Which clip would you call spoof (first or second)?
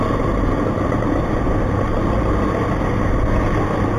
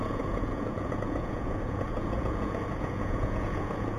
second